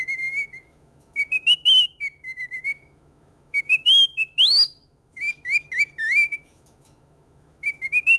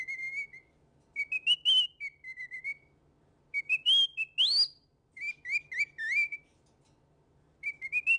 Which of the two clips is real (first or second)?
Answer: second